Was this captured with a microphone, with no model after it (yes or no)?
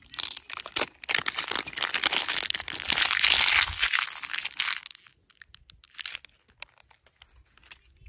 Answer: yes